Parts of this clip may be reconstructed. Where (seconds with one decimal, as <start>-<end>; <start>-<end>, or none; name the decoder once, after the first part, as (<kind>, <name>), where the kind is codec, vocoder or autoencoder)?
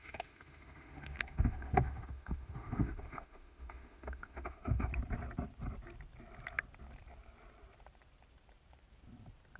0.0-4.9 (autoencoder, DAC-VAE)